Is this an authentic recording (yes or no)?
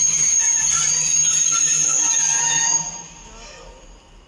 yes